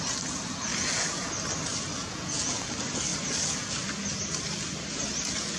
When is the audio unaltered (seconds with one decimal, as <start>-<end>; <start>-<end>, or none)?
0.0-0.7; 1.3-2.0; 2.7-5.6